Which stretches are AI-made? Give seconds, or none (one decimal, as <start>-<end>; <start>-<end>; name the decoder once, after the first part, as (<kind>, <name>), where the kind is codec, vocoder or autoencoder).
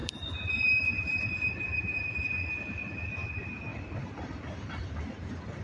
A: 0.0-2.1 (vocoder, BigVGAN v2); 3.7-5.6